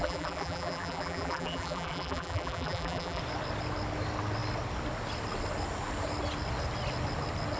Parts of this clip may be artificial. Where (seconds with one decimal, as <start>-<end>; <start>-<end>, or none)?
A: 0.0-3.2